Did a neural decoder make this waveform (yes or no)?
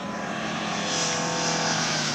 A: no